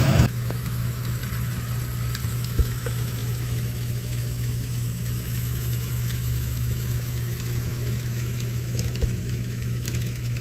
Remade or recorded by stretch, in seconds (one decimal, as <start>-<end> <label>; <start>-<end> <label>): 0.0-1.2 remade; 1.2-2.3 recorded; 2.3-10.4 remade